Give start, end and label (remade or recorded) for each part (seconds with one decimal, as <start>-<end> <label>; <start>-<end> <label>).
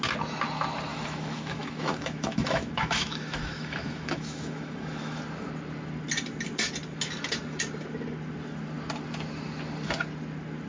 0.0-0.9 recorded; 0.9-5.2 remade; 5.2-10.7 recorded